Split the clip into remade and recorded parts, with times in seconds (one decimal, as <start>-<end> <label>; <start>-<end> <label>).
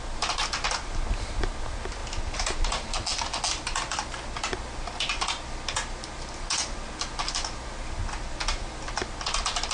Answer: 0.0-9.7 recorded